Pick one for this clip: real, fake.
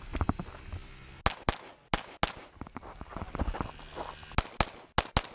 real